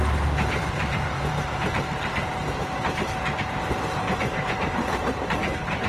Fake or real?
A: fake